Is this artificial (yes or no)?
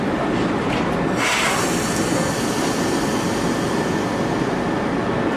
no